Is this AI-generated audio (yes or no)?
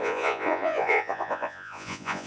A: yes